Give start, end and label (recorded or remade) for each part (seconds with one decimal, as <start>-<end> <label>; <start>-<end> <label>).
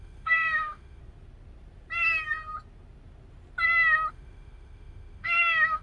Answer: 0.0-1.0 remade; 1.0-4.1 recorded; 4.1-5.8 remade